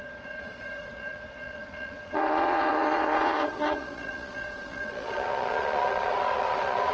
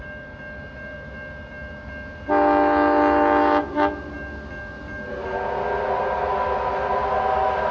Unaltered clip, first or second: second